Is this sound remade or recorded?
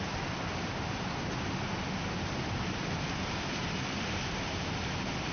recorded